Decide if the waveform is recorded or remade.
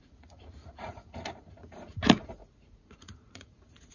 remade